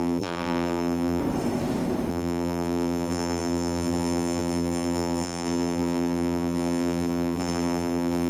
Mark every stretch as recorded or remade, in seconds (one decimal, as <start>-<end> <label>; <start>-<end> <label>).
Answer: 0.0-1.2 remade; 1.2-2.1 recorded; 2.1-8.3 remade